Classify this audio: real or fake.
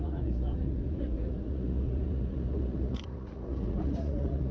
fake